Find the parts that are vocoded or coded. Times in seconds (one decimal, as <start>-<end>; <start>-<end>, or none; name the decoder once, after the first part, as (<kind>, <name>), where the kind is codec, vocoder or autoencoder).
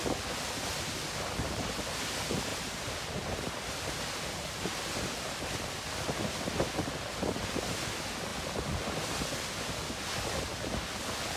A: 2.5-4.6 (vocoder, BigVGAN v2)